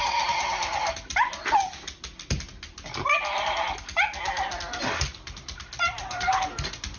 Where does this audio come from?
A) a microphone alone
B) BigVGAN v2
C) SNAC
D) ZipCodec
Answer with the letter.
A